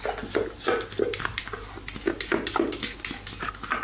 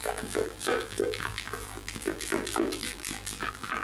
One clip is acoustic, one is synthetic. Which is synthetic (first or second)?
second